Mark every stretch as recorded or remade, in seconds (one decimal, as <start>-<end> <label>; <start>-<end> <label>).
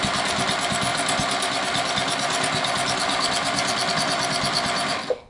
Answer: 0.0-5.3 recorded